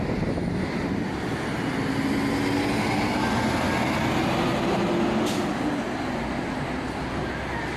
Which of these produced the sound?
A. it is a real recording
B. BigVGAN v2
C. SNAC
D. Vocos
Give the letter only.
A